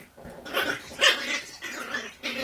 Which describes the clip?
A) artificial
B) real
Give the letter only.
B